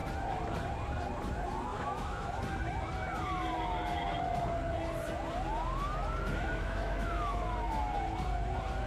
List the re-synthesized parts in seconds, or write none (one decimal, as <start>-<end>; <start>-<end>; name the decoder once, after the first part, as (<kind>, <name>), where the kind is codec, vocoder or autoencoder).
1.7-2.4 (autoencoder, DAC-VAE); 6.5-7.8